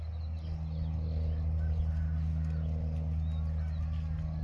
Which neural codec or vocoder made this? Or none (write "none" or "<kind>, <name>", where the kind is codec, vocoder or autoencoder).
none